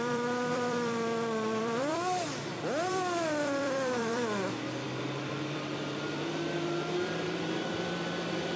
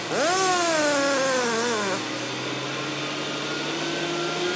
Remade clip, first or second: first